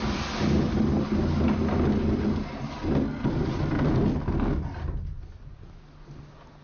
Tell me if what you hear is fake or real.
real